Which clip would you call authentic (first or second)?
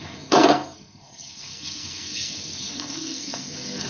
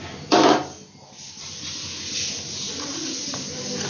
second